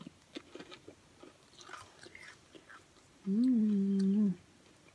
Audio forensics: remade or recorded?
recorded